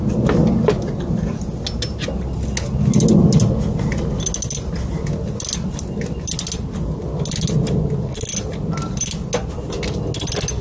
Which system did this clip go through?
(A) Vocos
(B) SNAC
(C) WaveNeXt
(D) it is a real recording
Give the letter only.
D